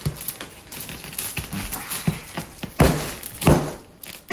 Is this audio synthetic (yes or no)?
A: no